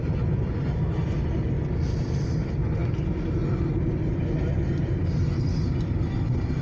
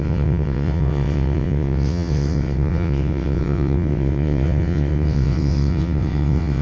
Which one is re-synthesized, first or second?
second